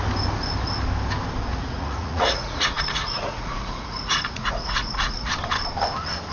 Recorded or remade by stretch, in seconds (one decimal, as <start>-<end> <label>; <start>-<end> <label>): 0.0-1.5 recorded; 1.5-5.3 remade; 5.3-6.3 recorded